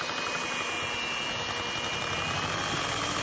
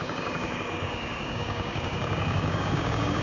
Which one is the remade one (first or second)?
second